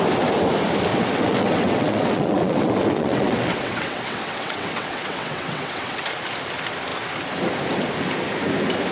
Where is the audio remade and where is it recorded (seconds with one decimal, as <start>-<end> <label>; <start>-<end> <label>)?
0.0-0.9 recorded; 0.9-6.0 remade; 6.0-8.9 recorded